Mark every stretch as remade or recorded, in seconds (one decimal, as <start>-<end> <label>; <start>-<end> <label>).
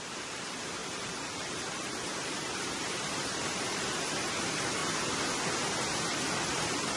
0.0-4.8 remade; 4.8-6.4 recorded; 6.4-7.0 remade